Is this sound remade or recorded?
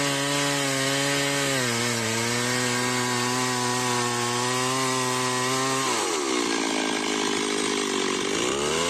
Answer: recorded